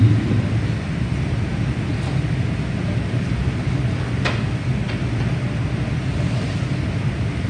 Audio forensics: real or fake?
real